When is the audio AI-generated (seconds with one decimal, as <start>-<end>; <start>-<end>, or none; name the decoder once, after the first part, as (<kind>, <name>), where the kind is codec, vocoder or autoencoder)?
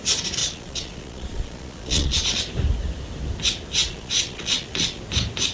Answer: 0.4-2.4 (vocoder, Vocos); 3.8-5.0